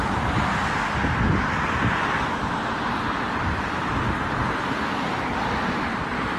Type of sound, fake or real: real